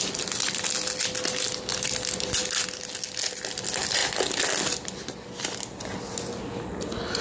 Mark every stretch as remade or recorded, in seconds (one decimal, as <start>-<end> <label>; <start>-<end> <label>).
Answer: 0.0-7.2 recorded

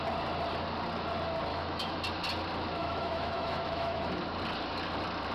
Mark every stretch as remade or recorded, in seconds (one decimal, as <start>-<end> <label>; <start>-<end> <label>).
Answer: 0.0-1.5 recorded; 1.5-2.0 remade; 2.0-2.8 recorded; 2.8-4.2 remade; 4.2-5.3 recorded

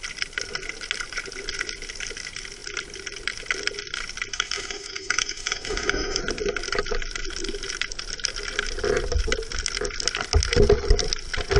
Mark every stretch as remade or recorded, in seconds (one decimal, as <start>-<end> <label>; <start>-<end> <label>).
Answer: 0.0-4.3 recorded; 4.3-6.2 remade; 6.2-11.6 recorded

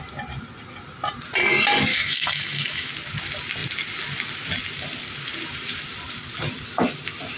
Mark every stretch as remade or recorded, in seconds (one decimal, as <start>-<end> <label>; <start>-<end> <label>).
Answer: 0.0-1.9 recorded; 1.9-2.9 remade; 2.9-7.4 recorded